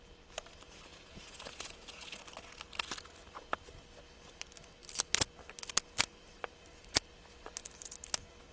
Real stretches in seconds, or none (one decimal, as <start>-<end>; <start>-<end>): 0.0-0.9; 2.2-8.5